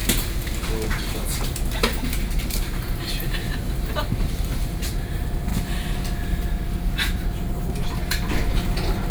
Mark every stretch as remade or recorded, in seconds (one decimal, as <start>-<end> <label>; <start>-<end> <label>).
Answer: 0.0-3.9 remade; 3.9-5.5 recorded; 5.5-7.6 remade; 7.6-9.1 recorded

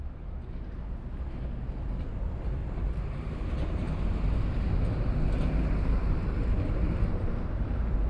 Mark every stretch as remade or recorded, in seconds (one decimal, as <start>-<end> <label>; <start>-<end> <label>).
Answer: 0.0-2.6 recorded; 2.6-3.9 remade; 3.9-8.1 recorded

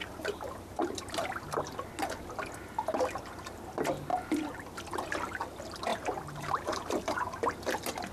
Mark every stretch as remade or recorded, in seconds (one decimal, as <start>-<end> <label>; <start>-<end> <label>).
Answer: 0.0-0.8 remade; 0.8-4.1 recorded; 4.1-4.9 remade; 4.9-5.9 recorded; 5.9-7.4 remade; 7.4-8.1 recorded

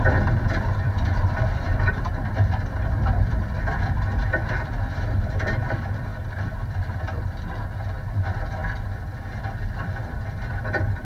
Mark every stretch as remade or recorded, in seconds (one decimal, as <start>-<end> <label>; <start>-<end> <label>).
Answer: 0.0-8.6 remade; 8.6-9.2 recorded; 9.2-11.0 remade

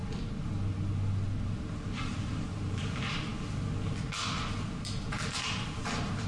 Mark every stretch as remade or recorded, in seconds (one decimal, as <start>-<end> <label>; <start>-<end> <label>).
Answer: 0.0-1.4 recorded; 1.4-3.3 remade; 3.3-5.4 recorded; 5.4-6.3 remade